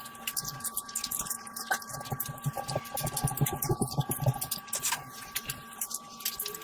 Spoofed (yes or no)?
no